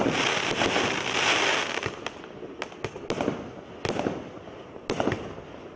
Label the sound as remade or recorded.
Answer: recorded